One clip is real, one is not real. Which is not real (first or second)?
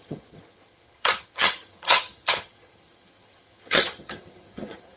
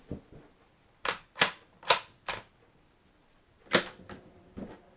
first